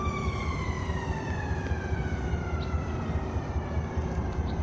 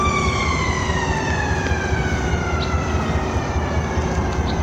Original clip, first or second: second